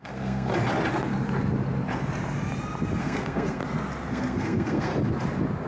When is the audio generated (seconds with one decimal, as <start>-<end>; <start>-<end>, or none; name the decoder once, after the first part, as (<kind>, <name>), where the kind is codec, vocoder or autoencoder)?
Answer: 0.0-0.5 (codec, SNAC); 3.0-3.6; 4.1-4.9